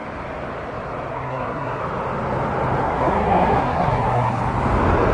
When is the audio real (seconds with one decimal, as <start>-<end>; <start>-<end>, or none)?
0.0-1.1; 1.8-2.8; 4.4-5.1